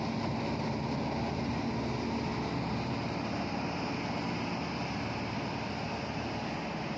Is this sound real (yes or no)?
yes